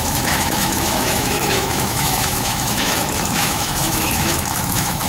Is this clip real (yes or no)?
no